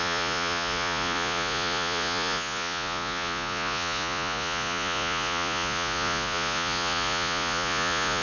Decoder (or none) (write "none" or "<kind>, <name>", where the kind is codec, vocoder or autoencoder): vocoder, Vocos